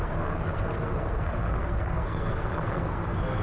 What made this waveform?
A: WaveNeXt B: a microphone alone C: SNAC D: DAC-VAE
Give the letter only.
C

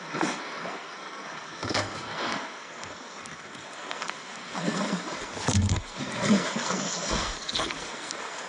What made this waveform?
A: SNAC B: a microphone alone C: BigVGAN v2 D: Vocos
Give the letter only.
A